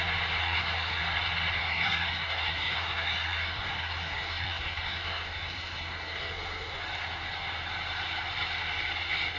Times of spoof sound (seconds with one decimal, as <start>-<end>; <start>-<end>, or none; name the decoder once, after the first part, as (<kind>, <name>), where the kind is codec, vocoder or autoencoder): 0.4-1.0 (codec, SNAC); 1.6-6.8